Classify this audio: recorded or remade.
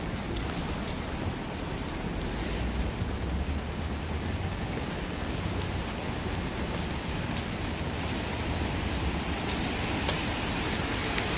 remade